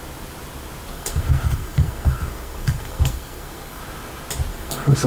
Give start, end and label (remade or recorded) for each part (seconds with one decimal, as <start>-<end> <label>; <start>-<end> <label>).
0.0-0.9 recorded; 0.9-3.8 remade; 3.8-4.5 recorded; 4.5-5.1 remade